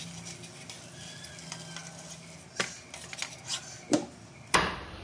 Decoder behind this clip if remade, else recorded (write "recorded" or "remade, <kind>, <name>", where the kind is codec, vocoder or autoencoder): recorded